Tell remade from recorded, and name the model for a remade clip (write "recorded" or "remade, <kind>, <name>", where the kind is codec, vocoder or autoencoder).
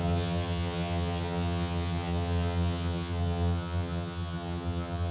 remade, vocoder, HiFi-GAN